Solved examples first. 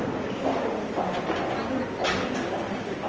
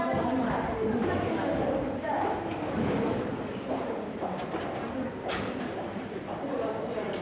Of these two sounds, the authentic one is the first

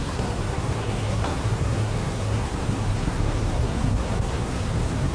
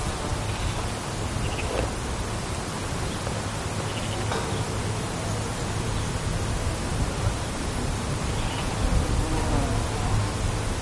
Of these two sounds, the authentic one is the second